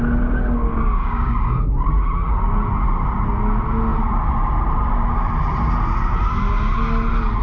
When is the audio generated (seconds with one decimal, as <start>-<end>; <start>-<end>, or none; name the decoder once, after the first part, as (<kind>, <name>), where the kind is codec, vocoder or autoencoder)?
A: 0.7-1.7 (codec, DAC)